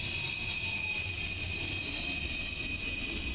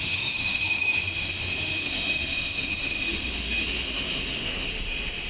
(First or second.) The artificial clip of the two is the second